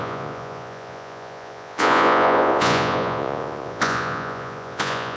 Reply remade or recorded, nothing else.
remade